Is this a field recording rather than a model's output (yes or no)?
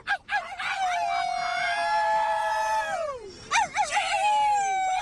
yes